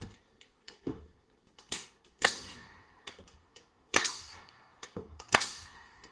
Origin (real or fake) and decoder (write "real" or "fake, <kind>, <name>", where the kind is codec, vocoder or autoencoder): fake, codec, SNAC